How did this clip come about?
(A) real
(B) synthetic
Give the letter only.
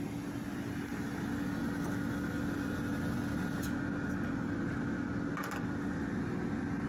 A